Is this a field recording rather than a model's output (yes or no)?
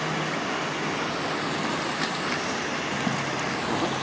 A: yes